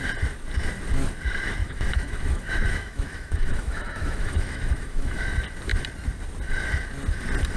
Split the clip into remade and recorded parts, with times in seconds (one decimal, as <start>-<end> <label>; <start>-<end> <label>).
0.0-1.6 recorded; 1.6-5.2 remade; 5.2-7.6 recorded